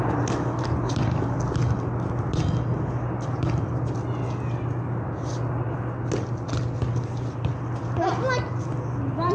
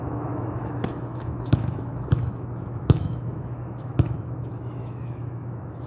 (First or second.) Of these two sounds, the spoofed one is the second